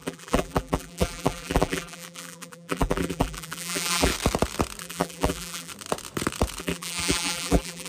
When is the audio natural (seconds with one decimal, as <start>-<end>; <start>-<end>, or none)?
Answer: 4.1-4.8; 5.7-6.6